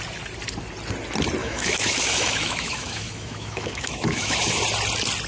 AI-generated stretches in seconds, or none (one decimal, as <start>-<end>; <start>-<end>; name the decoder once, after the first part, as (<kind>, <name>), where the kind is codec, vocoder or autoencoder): 1.4-4.6 (autoencoder, DAC-VAE)